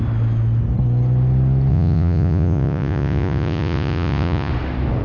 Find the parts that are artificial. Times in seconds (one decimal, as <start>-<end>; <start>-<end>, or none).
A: 1.7-4.5